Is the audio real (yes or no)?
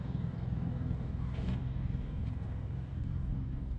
no